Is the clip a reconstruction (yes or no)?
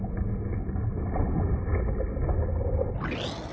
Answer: no